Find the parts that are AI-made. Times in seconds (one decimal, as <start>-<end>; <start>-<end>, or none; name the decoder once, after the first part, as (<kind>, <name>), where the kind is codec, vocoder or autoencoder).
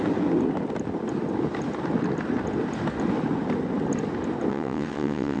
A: 4.5-5.4 (vocoder, WaveNeXt)